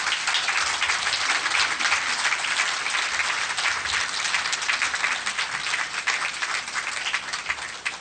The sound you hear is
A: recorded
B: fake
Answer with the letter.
A